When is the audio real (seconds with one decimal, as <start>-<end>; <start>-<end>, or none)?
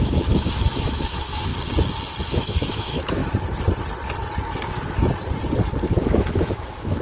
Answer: 1.5-2.3; 3.2-6.0